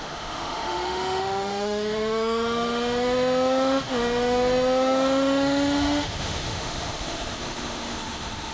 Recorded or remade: remade